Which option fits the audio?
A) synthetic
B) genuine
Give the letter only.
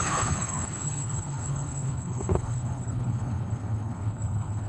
A